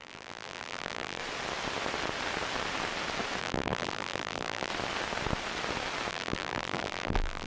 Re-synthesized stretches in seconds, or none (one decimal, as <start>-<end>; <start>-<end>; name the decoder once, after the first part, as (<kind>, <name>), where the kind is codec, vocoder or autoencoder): 0.0-1.2 (vocoder, BigVGAN v2); 3.4-4.7; 6.1-7.5